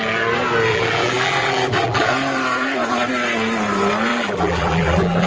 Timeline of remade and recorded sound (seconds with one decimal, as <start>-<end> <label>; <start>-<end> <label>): 0.0-0.7 recorded; 0.7-2.1 remade; 2.1-4.1 recorded; 4.1-5.3 remade